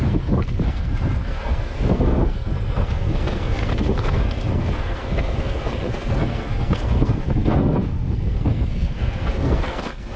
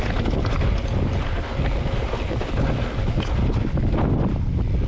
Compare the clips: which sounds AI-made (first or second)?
first